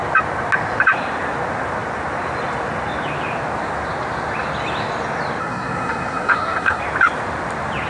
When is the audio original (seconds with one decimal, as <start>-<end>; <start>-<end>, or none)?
0.0-5.4; 6.8-7.9